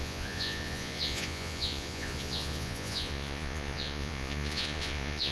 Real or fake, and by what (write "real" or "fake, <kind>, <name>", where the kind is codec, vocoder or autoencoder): fake, vocoder, Vocos